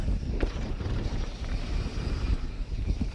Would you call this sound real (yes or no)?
no